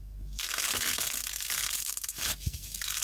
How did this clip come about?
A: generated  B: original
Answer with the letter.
A